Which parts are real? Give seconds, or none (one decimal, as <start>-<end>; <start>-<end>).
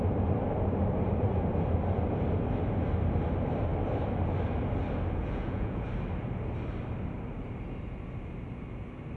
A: 0.0-5.2; 5.9-9.2